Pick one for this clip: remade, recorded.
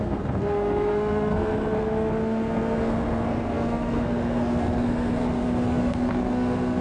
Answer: remade